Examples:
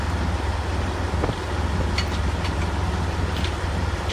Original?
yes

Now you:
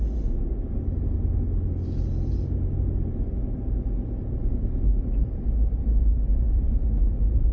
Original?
yes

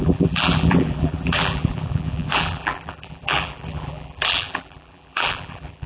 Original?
no